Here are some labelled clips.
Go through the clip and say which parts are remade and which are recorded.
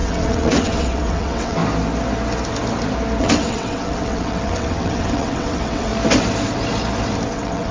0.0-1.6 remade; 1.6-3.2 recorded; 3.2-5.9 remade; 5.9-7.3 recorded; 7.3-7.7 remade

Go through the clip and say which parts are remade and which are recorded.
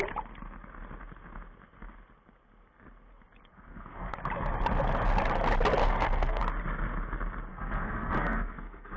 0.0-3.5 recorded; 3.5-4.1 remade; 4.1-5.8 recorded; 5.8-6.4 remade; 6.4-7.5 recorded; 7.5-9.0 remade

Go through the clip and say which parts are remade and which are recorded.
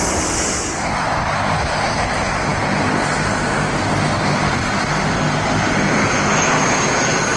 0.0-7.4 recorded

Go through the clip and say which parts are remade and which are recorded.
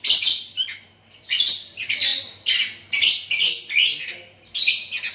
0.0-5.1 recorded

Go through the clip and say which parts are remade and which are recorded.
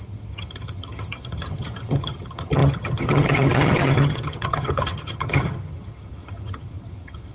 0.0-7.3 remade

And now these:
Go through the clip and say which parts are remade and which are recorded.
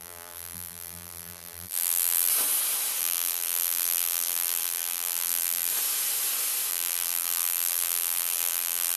0.0-2.3 remade; 2.3-3.0 recorded; 3.0-5.7 remade; 5.7-6.7 recorded; 6.7-9.0 remade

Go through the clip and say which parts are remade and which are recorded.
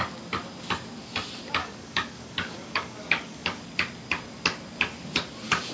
0.0-1.6 recorded; 1.6-3.6 remade; 3.6-5.7 recorded